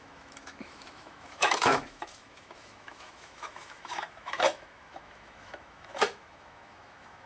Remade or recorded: remade